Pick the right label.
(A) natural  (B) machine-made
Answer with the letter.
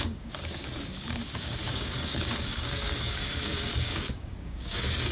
B